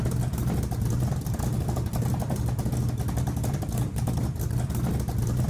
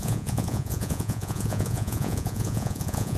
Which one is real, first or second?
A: first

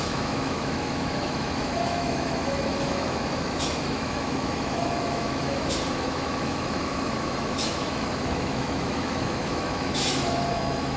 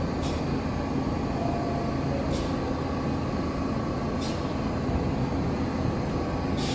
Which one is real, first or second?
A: second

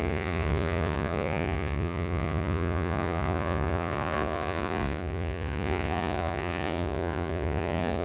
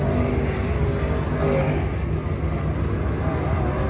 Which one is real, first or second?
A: second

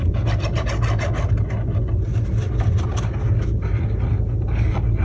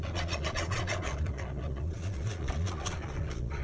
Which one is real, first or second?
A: first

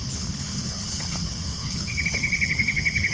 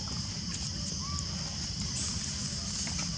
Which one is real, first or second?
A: second